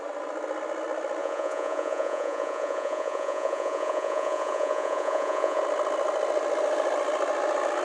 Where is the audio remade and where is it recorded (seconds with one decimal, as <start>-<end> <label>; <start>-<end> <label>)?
0.0-1.2 recorded; 1.2-5.6 remade; 5.6-7.8 recorded